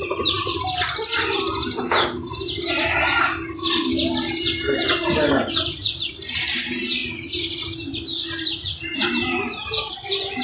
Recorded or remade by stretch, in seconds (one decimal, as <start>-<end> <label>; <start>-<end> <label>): 0.0-10.4 recorded